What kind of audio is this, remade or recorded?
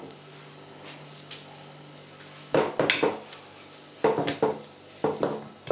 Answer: recorded